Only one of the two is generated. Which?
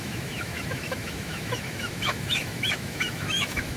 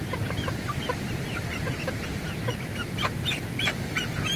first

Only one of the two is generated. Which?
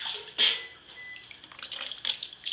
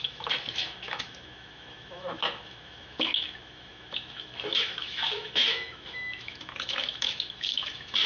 second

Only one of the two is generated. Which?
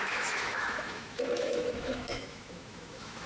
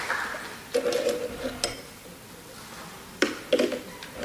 first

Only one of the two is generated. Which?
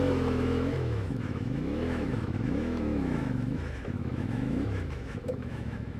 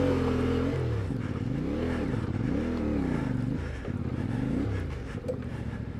first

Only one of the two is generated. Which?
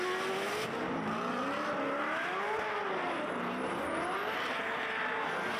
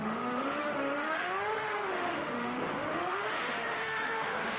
second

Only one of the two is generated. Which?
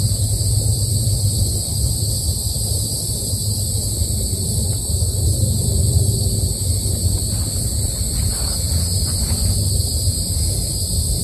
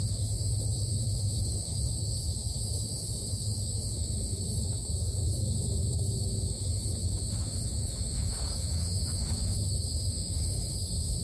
second